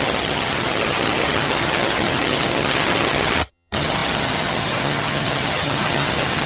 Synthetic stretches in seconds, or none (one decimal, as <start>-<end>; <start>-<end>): 0.0-6.5